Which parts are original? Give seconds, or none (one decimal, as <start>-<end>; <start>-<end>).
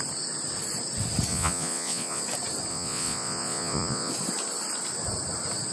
0.0-1.3; 2.2-2.7; 4.1-5.7